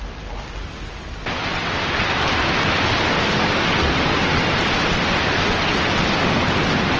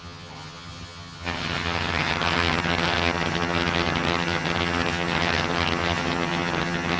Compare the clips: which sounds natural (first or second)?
first